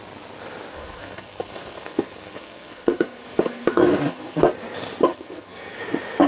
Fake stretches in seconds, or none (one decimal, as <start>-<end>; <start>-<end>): 0.7-4.4; 5.1-5.8